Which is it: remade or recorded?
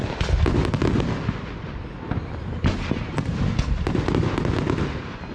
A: recorded